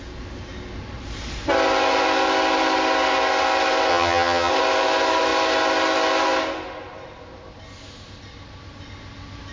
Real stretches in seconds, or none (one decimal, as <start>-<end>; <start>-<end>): 0.0-3.9; 4.5-9.5